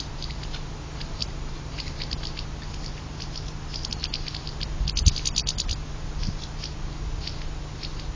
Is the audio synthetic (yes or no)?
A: no